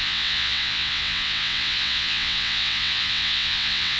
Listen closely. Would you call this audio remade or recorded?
remade